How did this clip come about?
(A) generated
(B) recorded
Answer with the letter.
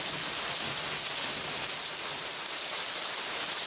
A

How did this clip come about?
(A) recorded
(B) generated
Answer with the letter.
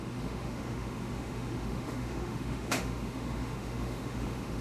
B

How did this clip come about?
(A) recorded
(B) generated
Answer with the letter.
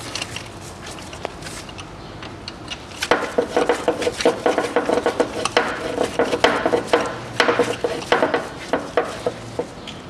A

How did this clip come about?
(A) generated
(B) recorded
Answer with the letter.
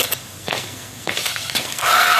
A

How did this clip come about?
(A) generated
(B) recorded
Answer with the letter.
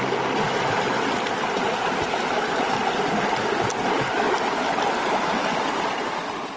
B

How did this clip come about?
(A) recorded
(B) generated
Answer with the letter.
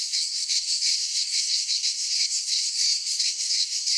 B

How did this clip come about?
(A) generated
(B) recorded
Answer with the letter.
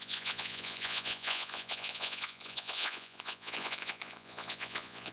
A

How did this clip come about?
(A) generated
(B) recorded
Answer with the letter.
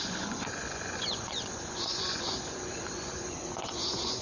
A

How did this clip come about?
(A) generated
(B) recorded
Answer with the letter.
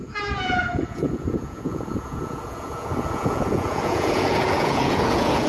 A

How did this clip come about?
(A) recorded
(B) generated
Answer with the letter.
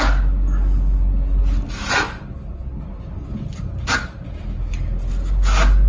A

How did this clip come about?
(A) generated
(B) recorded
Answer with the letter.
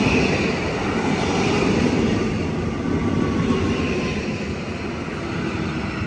B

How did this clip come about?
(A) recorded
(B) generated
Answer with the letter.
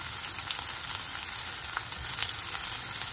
A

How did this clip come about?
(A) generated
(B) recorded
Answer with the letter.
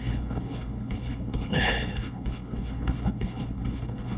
A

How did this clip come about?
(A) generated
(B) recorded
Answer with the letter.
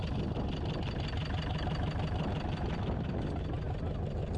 B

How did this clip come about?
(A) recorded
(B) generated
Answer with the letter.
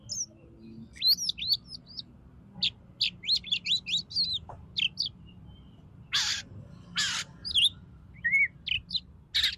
A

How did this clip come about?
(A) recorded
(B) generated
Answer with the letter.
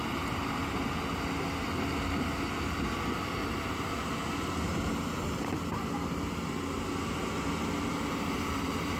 A